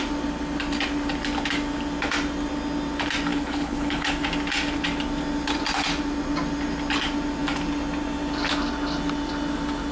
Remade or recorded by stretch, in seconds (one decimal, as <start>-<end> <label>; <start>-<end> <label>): 0.0-3.3 recorded; 3.3-4.1 remade; 4.1-9.9 recorded